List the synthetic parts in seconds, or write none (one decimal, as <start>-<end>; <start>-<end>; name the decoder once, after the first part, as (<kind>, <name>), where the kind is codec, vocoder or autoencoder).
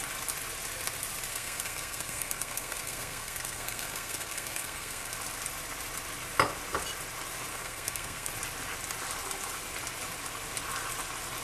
1.3-5.1 (codec, SNAC); 7.5-8.3